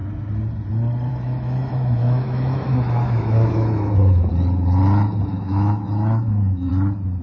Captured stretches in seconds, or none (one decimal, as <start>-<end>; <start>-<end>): 0.0-1.1; 4.3-5.3; 6.7-7.2